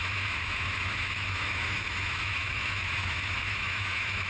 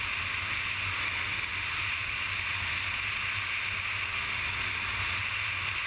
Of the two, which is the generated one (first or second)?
first